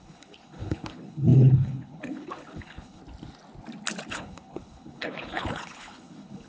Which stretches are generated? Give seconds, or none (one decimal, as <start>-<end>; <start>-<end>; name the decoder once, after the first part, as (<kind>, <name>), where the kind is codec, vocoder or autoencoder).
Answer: 0.0-3.0 (codec, HILCodec); 4.1-6.5